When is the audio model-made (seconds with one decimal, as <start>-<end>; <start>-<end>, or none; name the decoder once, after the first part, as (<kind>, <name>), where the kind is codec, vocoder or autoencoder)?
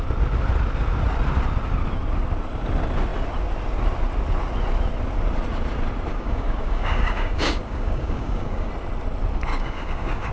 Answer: 6.1-8.7 (codec, DAC); 9.5-10.3